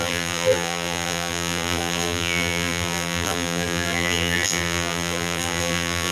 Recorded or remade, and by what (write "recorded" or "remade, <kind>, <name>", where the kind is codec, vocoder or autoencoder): remade, vocoder, BigVGAN v2